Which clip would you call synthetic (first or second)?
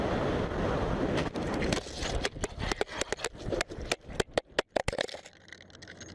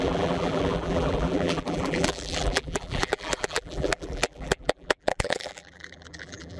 second